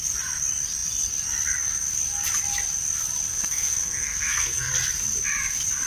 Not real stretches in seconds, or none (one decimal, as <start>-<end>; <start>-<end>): 3.3-4.7